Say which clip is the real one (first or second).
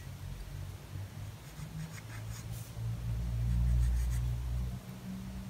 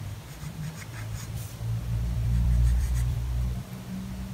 first